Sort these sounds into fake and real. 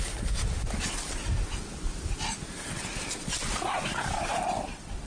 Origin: real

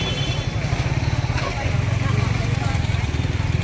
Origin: real